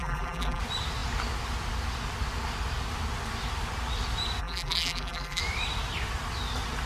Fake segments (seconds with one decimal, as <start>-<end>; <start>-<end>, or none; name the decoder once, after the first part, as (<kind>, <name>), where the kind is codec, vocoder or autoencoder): 0.0-0.6 (vocoder, BigVGAN v2); 4.4-5.4